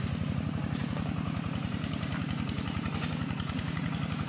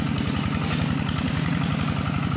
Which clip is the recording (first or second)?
second